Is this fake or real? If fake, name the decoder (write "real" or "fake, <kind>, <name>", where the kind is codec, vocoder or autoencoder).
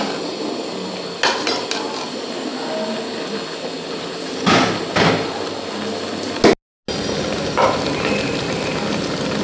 real